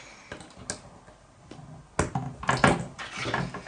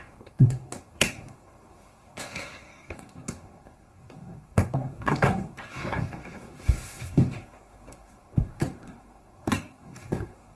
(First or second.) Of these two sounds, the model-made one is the second